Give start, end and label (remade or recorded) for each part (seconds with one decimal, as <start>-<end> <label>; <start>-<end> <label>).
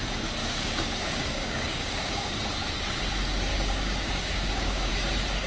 0.0-0.4 recorded; 0.4-2.3 remade; 2.3-3.5 recorded; 3.5-4.9 remade; 4.9-5.5 recorded